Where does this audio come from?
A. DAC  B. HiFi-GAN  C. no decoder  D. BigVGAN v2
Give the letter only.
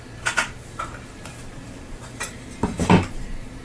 D